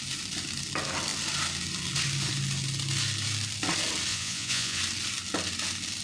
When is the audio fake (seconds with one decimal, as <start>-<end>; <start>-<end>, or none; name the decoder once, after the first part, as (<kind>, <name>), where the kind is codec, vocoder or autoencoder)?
4.1-4.8 (vocoder, Vocos)